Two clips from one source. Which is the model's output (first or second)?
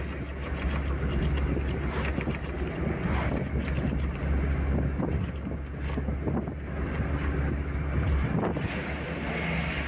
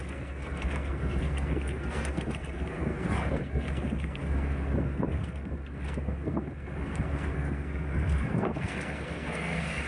second